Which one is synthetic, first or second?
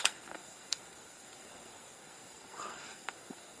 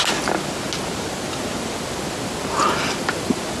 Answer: first